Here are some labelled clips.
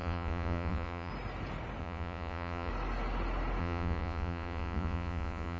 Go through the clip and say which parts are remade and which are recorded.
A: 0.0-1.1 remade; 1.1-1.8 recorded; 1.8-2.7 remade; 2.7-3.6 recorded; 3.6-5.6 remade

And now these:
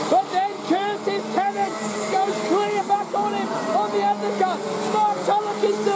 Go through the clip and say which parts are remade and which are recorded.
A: 0.0-6.0 recorded

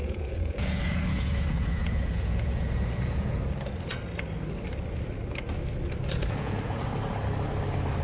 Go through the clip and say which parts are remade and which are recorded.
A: 0.0-3.4 remade; 3.4-6.2 recorded; 6.2-6.8 remade; 6.8-8.0 recorded

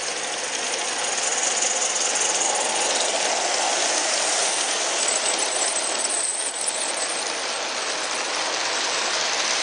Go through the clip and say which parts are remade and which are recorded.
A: 0.0-9.6 recorded

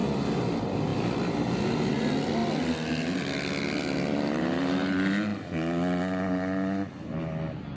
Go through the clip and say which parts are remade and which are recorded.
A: 0.0-7.8 recorded

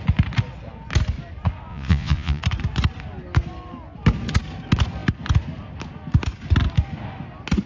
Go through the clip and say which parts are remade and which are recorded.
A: 0.0-1.7 recorded; 1.7-2.4 remade; 2.4-7.7 recorded

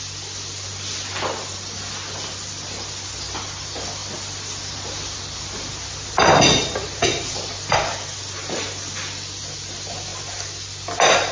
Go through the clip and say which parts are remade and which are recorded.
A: 0.0-11.3 recorded

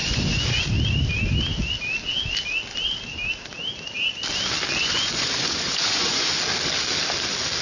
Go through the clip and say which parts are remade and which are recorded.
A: 0.0-0.6 remade; 0.6-4.8 recorded; 4.8-6.3 remade; 6.3-7.6 recorded